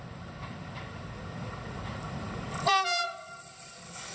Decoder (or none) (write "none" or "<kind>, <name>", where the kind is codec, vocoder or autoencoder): vocoder, BigVGAN v2